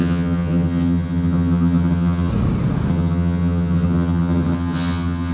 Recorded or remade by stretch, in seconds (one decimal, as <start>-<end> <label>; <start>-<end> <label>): 0.0-2.3 remade; 2.3-2.9 recorded; 2.9-5.3 remade